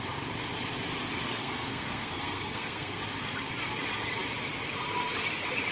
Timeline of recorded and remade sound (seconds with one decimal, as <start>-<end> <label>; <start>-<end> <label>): 0.0-1.3 recorded; 1.3-3.0 remade; 3.0-5.7 recorded